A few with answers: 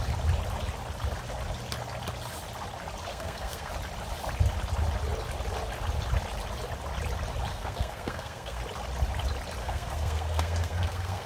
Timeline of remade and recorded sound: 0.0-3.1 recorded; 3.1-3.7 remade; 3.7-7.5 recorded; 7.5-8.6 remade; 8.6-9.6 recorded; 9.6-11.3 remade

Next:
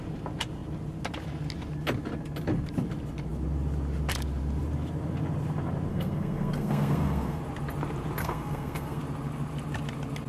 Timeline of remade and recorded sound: 0.0-5.9 recorded; 5.9-7.4 remade; 7.4-8.2 recorded; 8.2-9.0 remade; 9.0-10.3 recorded